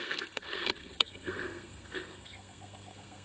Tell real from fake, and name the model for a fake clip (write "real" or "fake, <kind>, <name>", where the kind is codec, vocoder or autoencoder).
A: fake, codec, SNAC